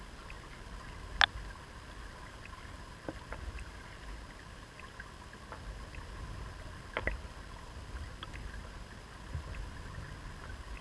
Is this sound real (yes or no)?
yes